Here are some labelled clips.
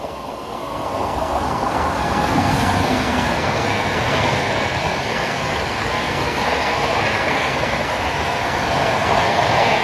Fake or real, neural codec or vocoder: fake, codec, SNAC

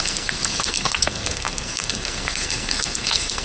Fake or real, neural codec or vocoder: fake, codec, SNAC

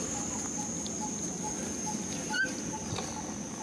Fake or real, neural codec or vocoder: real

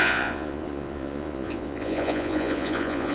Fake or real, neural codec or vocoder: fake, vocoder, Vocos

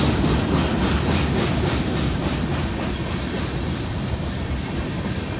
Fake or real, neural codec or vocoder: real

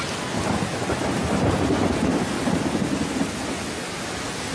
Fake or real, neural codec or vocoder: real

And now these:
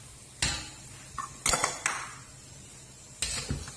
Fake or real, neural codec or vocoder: real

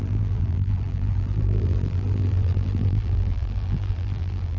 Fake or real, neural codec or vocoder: fake, vocoder, BigVGAN v2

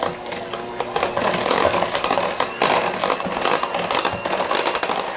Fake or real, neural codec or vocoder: real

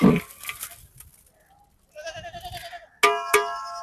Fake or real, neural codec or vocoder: real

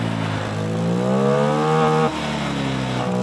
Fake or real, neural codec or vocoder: real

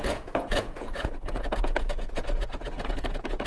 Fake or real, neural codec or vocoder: fake, vocoder, Vocos